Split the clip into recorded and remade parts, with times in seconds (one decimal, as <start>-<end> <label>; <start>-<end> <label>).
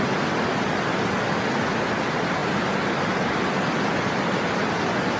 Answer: 0.0-5.2 recorded